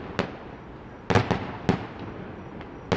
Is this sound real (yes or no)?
yes